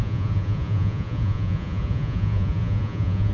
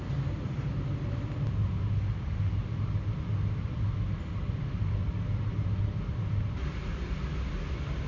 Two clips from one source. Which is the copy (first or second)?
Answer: first